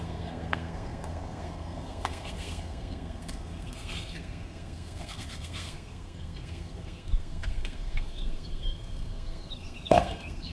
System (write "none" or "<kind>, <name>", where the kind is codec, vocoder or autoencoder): codec, SNAC